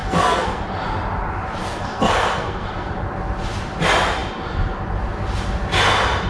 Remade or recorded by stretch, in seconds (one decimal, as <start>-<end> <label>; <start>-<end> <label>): 0.0-0.6 remade; 0.6-1.6 recorded; 1.6-2.9 remade; 2.9-6.3 recorded

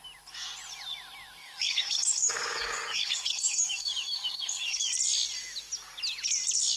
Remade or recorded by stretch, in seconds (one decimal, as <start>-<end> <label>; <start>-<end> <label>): 0.0-1.4 recorded; 1.4-4.9 remade; 4.9-6.8 recorded

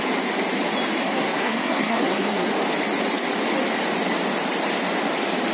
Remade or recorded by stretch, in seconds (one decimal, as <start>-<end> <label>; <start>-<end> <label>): 0.0-1.0 recorded; 1.0-2.5 remade; 2.5-5.5 recorded

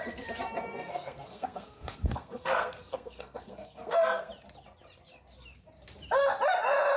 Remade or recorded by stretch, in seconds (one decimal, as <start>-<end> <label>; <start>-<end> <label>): 0.0-0.7 recorded; 0.7-4.3 remade; 4.3-7.0 recorded

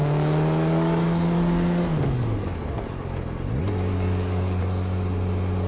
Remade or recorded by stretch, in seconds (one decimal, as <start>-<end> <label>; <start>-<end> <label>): 0.0-3.2 remade; 3.2-3.9 recorded; 3.9-4.6 remade; 4.6-5.7 recorded

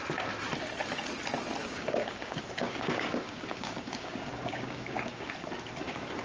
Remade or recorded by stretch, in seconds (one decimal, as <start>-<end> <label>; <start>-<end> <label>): 0.0-1.6 recorded; 1.6-5.3 remade; 5.3-6.2 recorded